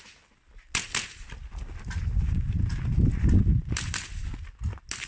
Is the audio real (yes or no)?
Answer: yes